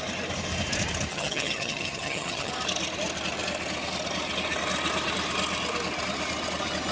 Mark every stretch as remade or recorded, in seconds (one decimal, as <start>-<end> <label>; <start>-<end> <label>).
0.0-1.1 recorded; 1.1-2.5 remade; 2.5-6.9 recorded